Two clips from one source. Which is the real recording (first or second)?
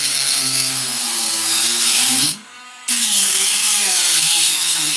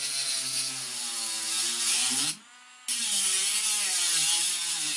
second